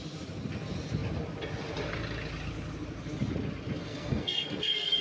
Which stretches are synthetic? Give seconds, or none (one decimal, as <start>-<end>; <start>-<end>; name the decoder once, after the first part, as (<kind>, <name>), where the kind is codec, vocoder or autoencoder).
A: 3.8-5.0 (codec, SNAC)